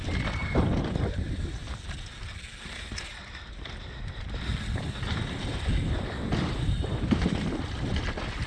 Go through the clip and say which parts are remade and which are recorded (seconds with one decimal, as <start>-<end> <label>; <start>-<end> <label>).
0.0-0.4 recorded; 0.4-1.2 remade; 1.2-4.5 recorded; 4.5-8.1 remade; 8.1-8.5 recorded